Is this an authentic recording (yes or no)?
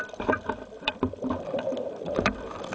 no